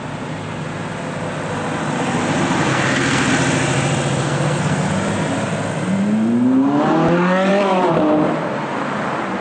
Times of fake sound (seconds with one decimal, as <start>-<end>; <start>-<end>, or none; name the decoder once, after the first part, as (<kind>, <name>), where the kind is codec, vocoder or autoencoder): 2.7-3.3 (codec, SNAC); 4.2-4.9